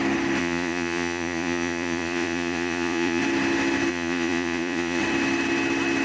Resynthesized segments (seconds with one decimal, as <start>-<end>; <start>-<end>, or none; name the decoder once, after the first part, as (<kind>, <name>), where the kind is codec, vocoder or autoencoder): 0.4-3.2 (vocoder, Vocos); 3.9-5.0